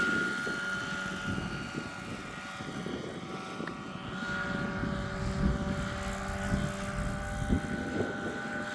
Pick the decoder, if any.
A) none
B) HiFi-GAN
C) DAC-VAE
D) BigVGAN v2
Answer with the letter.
A